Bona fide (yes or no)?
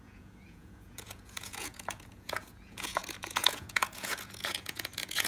no